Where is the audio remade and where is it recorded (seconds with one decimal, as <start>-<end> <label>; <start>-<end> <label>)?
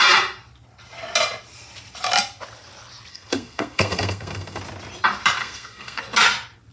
0.0-3.1 recorded; 3.1-4.6 remade; 4.6-5.4 recorded; 5.4-6.0 remade; 6.0-6.7 recorded